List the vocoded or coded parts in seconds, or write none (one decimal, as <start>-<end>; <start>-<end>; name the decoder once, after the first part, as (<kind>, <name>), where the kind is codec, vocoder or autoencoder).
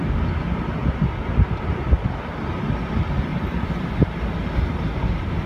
3.3-4.2 (vocoder, BigVGAN v2)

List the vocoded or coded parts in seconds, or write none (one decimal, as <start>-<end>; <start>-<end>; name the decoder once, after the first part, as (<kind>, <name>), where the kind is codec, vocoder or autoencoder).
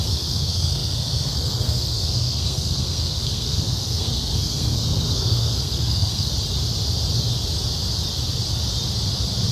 0.0-6.3 (codec, SNAC)